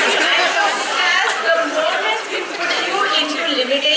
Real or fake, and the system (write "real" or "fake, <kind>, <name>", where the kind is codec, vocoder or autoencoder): real